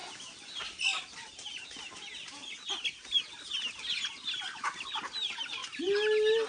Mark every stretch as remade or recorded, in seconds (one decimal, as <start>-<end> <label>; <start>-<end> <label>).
0.0-1.8 recorded; 1.8-2.4 remade; 2.4-5.0 recorded; 5.0-5.6 remade; 5.6-6.5 recorded